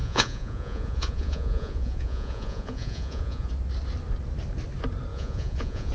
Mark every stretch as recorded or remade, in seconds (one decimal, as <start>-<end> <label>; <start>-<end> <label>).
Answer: 0.0-3.5 remade; 3.5-5.1 recorded; 5.1-5.9 remade